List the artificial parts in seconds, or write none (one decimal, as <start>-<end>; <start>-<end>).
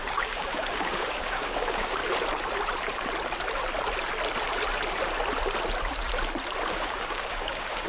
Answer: 0.0-2.0; 6.7-7.9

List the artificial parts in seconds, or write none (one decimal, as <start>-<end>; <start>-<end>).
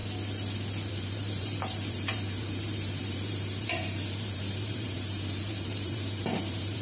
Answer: 0.9-6.8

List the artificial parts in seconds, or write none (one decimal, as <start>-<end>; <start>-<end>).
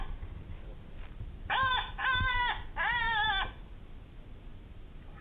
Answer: 0.7-3.3; 4.5-5.2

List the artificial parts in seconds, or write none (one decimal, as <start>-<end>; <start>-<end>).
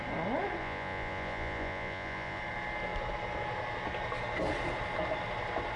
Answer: 0.6-2.4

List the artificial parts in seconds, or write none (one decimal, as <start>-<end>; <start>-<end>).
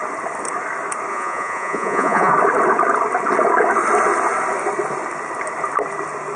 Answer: 1.1-2.3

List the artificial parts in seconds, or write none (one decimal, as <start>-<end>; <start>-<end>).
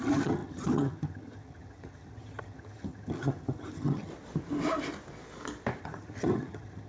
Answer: 0.0-4.1; 5.8-6.9